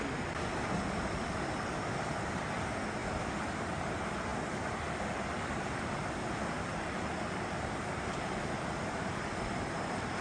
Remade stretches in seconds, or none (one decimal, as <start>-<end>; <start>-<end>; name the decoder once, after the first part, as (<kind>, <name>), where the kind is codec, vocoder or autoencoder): none